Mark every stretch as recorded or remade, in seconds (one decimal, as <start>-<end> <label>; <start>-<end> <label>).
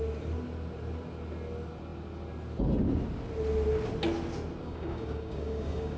0.0-4.6 recorded; 4.6-6.0 remade